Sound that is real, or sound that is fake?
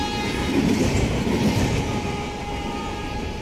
fake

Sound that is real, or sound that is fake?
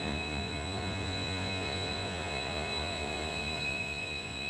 fake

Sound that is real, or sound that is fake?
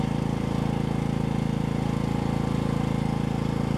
real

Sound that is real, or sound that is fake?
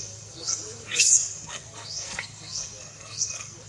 fake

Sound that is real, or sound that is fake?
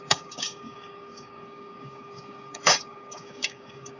fake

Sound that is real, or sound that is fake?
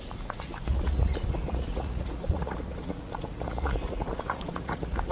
fake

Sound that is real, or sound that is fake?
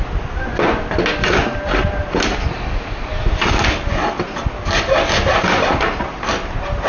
real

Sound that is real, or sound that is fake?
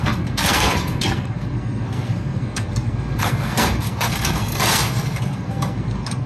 fake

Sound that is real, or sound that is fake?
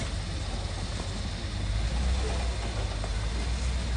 real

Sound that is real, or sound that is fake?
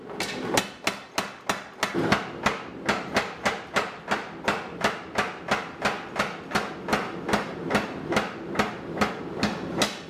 real